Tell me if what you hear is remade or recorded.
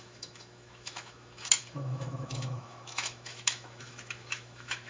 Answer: remade